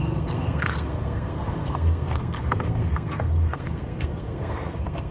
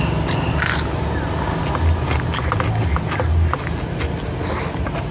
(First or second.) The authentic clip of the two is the second